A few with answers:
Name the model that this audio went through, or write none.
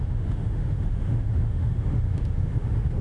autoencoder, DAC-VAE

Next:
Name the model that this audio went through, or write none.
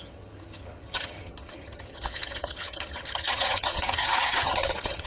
vocoder, HiFi-GAN